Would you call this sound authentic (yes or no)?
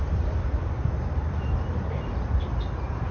no